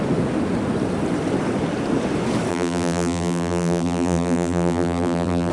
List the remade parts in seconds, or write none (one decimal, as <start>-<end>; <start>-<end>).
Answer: 2.5-5.5